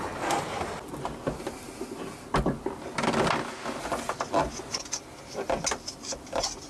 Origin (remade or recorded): recorded